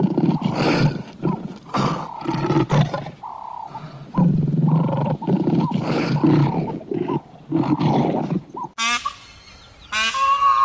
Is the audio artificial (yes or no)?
no